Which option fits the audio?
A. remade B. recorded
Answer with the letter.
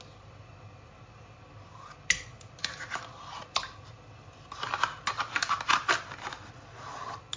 B